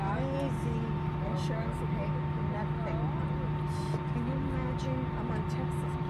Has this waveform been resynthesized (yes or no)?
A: no